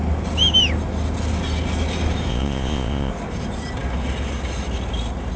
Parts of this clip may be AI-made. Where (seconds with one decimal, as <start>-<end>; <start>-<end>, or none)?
2.3-3.1